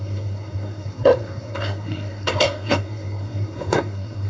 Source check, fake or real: fake